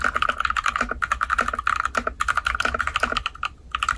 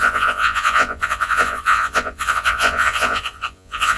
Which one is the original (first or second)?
first